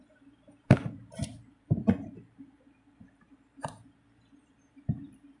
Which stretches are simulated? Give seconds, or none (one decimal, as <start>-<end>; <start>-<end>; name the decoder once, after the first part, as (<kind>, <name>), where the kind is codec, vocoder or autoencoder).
0.0-5.4 (vocoder, BigVGAN v2)